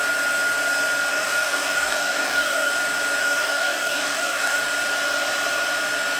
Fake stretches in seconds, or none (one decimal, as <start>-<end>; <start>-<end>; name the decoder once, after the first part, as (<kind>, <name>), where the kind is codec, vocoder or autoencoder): 1.1-2.7 (codec, DAC); 3.2-4.6